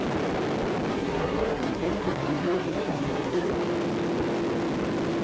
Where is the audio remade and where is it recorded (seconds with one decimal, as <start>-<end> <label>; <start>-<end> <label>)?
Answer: 0.0-0.9 recorded; 0.9-3.5 remade; 3.5-5.2 recorded